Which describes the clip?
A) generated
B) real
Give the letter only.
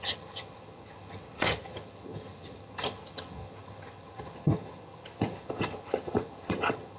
A